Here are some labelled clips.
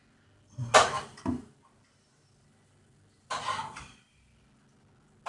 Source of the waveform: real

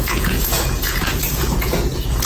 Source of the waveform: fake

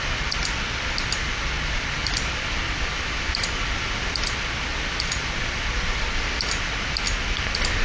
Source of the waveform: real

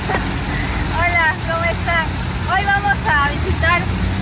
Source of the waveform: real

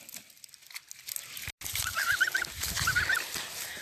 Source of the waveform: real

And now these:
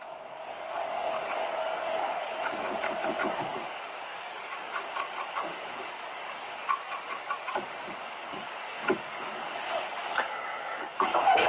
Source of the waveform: fake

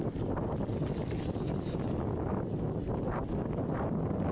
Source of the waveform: real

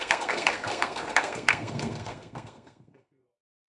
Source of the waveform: fake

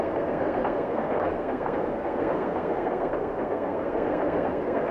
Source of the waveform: fake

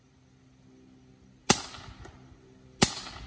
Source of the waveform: real